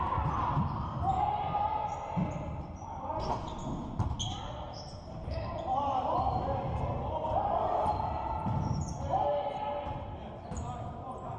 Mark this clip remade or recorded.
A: recorded